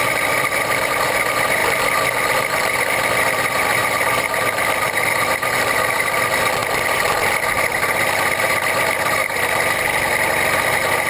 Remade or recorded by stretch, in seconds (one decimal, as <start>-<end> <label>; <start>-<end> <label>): 0.0-1.6 remade; 1.6-2.3 recorded; 2.3-6.6 remade; 6.6-7.5 recorded; 7.5-11.1 remade